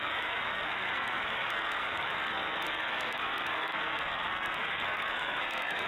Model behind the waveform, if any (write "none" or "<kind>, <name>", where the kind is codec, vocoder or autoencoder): codec, SNAC